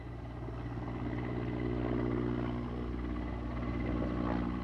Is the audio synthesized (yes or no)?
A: no